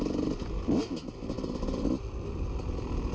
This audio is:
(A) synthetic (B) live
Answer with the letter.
B